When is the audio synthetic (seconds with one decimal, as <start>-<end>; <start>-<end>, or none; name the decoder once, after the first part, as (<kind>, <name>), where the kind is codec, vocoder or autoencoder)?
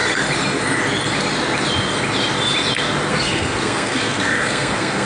3.1-5.1 (codec, SNAC)